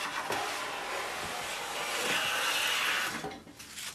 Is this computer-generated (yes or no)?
no